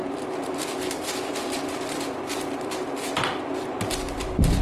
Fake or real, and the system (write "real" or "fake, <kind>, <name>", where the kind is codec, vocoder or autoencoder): real